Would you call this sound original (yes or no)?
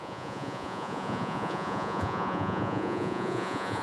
no